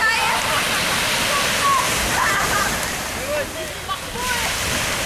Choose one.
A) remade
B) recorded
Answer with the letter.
B